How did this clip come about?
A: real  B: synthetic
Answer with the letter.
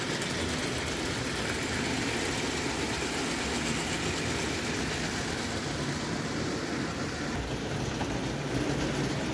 A